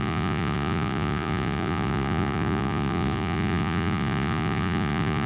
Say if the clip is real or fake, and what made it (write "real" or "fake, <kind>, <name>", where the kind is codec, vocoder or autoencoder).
fake, vocoder, Vocos